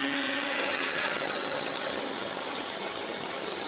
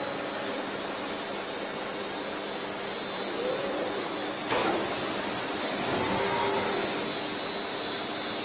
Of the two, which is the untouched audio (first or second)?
second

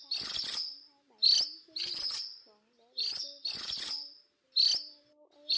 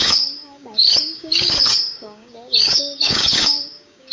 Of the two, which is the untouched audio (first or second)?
first